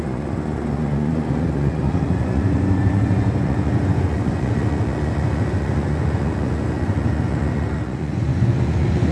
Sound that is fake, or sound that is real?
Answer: fake